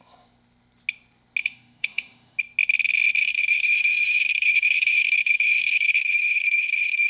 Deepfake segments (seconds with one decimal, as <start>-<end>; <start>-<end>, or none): 1.4-2.4; 3.2-7.1